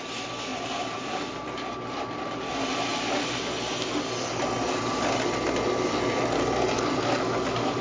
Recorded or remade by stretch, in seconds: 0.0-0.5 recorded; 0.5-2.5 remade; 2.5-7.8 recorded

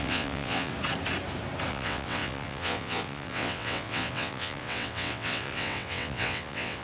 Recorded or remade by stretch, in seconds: 0.0-0.7 remade; 0.7-1.7 recorded; 1.7-6.8 remade

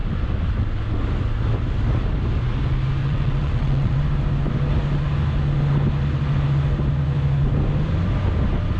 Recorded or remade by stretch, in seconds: 0.0-3.0 recorded; 3.0-4.0 remade; 4.0-8.8 recorded